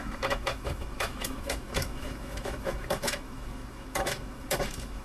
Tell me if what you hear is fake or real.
fake